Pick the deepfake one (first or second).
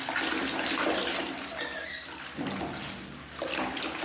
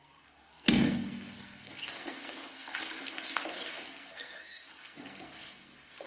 second